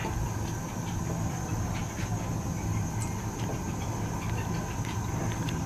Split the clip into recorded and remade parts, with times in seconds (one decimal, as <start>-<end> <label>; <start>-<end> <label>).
0.0-1.5 remade; 1.5-5.7 recorded